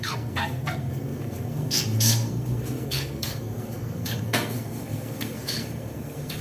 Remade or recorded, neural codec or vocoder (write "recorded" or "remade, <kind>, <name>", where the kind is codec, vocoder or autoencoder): remade, codec, SNAC